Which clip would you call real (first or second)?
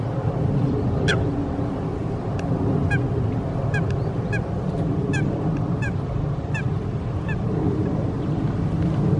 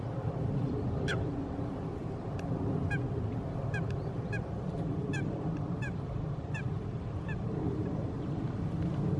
first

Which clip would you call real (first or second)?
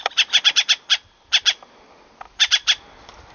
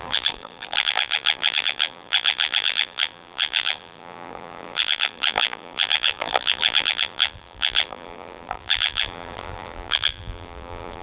first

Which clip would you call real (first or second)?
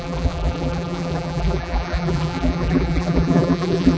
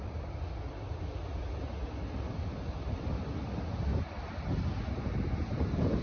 second